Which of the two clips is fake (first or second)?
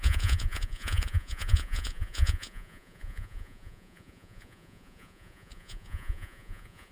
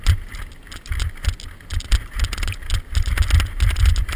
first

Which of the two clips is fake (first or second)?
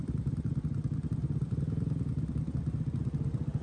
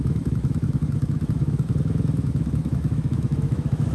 second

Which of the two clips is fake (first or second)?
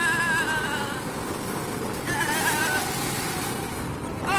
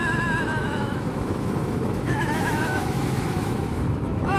second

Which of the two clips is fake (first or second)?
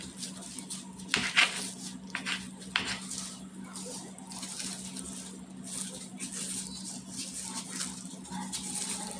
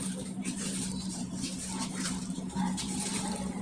second